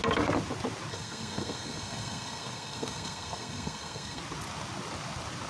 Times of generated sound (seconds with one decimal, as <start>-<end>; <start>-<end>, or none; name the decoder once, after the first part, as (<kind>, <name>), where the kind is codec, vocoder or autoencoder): 0.9-4.2 (codec, SNAC)